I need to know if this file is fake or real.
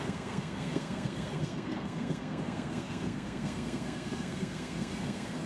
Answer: fake